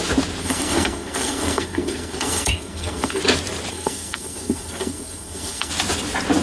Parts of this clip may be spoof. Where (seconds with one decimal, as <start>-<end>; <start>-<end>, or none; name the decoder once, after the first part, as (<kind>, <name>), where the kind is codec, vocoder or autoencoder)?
0.4-3.2 (codec, SNAC); 3.7-5.7